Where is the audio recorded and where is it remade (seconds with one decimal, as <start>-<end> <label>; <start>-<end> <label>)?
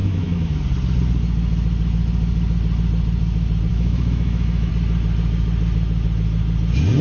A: 0.0-0.6 remade; 0.6-3.7 recorded; 3.7-4.7 remade; 4.7-7.0 recorded